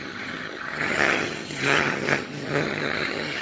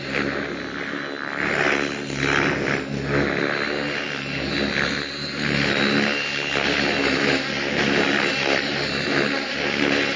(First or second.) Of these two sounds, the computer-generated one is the first